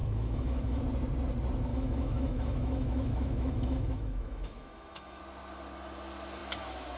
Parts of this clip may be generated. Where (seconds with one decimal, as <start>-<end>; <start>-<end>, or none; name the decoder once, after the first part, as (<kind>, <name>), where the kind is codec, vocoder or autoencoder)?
0.0-0.8 (autoencoder, DAC-VAE); 1.7-5.2